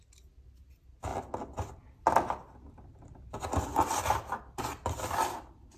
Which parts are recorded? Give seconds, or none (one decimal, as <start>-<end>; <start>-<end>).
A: 0.0-5.8